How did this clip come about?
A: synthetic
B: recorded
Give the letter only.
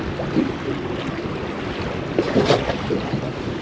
B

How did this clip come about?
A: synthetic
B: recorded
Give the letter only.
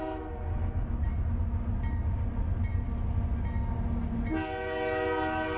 B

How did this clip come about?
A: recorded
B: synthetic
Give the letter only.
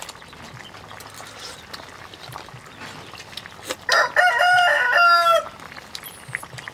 A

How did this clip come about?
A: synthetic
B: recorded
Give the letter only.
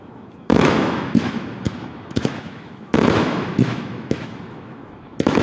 A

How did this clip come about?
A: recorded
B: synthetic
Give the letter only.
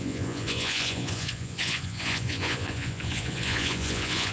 B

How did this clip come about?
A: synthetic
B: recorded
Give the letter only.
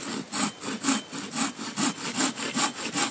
B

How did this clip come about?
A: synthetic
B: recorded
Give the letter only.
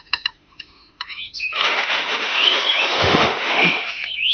A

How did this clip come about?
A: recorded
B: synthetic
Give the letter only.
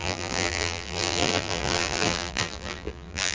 B